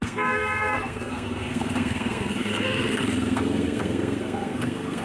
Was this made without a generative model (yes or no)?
no